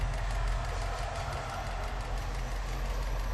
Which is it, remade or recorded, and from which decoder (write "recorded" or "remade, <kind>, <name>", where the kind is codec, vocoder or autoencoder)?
recorded